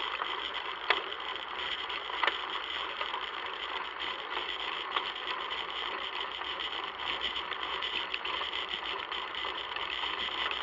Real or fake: fake